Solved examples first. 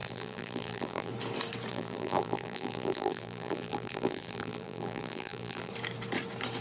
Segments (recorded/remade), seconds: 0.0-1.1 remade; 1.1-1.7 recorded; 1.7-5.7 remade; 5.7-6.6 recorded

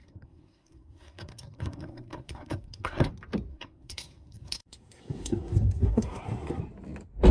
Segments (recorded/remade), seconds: 0.0-3.1 remade; 3.1-3.5 recorded; 3.5-6.6 remade; 6.6-7.3 recorded

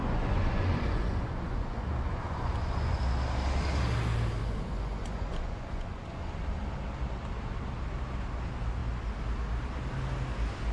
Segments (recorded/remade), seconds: 0.0-3.0 remade; 3.0-4.4 recorded; 4.4-6.2 remade; 6.2-10.7 recorded

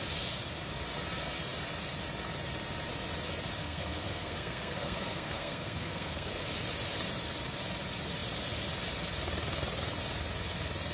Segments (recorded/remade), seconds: 0.0-3.6 recorded; 3.6-6.3 remade; 6.3-10.9 recorded

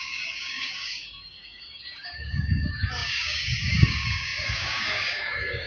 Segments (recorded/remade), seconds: 0.0-5.7 remade